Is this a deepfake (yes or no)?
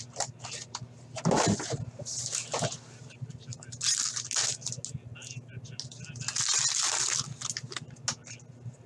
no